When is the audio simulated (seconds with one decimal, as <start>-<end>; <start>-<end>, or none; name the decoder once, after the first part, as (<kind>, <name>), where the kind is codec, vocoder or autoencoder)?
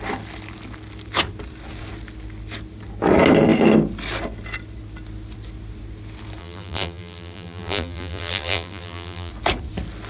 6.4-9.3 (vocoder, BigVGAN v2)